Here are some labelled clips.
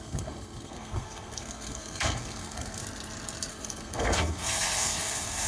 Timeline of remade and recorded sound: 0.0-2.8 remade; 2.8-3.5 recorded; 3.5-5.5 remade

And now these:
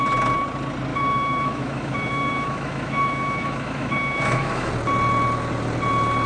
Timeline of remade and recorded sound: 0.0-0.9 recorded; 0.9-4.7 remade; 4.7-6.3 recorded

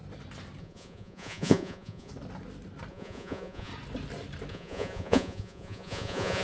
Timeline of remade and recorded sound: 0.0-0.6 recorded; 0.6-2.1 remade; 2.1-2.9 recorded; 2.9-3.7 remade; 3.7-4.5 recorded; 4.5-6.4 remade

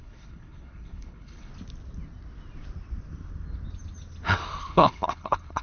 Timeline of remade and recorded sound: 0.0-1.5 remade; 1.5-4.6 recorded; 4.6-5.6 remade

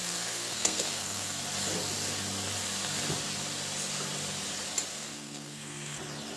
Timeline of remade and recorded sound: 0.0-1.4 remade; 1.4-4.9 recorded; 4.9-6.0 remade; 6.0-6.4 recorded

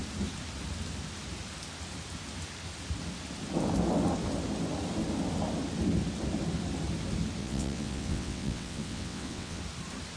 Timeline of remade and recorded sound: 0.0-7.4 recorded; 7.4-9.6 remade; 9.6-10.2 recorded

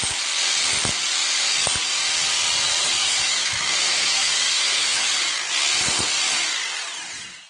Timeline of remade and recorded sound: 0.0-3.0 recorded; 3.0-5.1 remade; 5.1-7.5 recorded